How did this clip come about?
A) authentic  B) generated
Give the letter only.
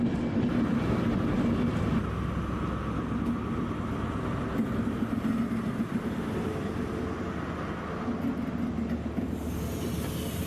A